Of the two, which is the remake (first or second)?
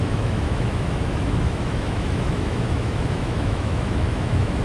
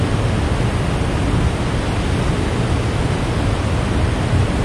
first